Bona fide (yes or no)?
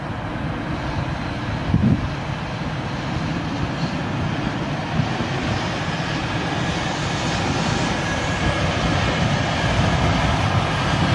yes